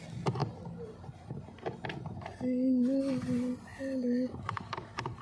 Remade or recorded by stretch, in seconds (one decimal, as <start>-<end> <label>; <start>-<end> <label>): 0.0-5.2 recorded